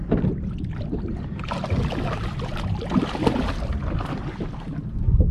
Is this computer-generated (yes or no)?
no